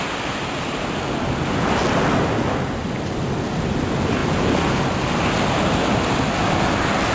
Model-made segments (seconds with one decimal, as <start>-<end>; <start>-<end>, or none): none